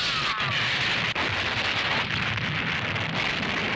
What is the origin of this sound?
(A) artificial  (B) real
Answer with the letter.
B